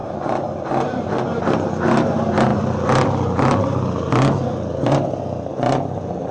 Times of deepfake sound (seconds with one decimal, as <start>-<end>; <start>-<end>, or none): 0.0-1.4